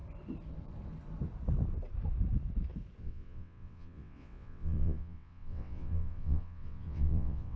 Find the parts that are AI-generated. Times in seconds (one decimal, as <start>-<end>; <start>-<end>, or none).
3.0-7.6